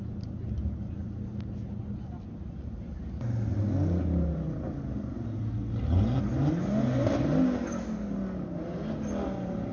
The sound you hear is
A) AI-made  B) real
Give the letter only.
B